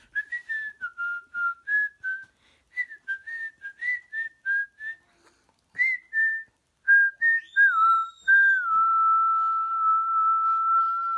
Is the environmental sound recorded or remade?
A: recorded